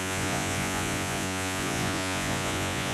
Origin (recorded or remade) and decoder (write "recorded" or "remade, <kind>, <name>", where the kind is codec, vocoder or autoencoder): remade, vocoder, Vocos